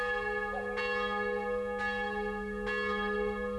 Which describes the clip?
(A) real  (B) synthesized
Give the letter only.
A